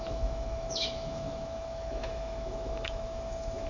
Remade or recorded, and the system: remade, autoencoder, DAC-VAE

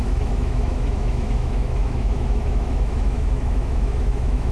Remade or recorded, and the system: remade, autoencoder, DAC-VAE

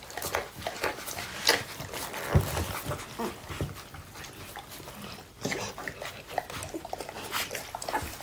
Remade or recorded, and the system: recorded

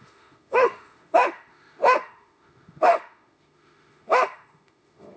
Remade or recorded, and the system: remade, autoencoder, DAC-VAE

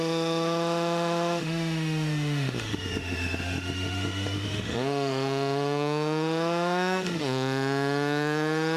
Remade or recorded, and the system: remade, autoencoder, DAC-VAE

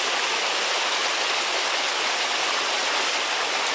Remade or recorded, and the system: recorded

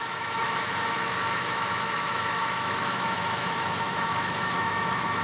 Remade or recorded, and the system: remade, autoencoder, DAC-VAE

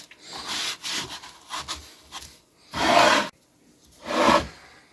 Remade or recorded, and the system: recorded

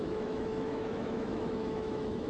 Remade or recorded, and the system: remade, autoencoder, DAC-VAE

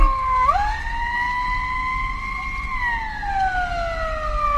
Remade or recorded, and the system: recorded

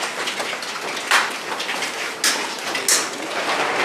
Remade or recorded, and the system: recorded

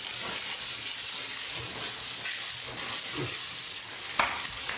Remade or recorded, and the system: recorded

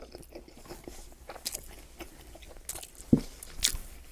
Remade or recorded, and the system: recorded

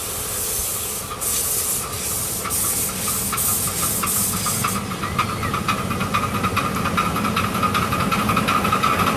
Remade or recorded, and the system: recorded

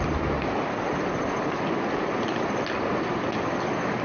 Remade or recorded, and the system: recorded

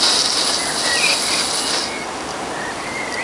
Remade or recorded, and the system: recorded